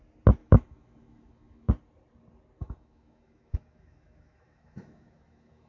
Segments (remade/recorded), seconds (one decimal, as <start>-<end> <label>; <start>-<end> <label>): 0.0-0.4 recorded; 0.4-1.7 remade; 1.7-2.6 recorded; 2.6-5.7 remade